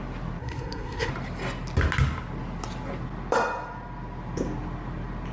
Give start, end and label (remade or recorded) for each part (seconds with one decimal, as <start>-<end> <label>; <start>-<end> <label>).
0.0-0.4 recorded; 0.4-1.1 remade; 1.1-5.3 recorded